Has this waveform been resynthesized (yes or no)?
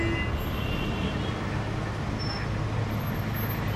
no